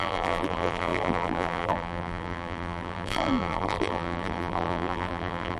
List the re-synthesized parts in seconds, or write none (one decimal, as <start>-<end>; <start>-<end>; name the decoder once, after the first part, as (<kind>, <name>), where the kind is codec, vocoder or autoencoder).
0.0-5.6 (vocoder, BigVGAN v2)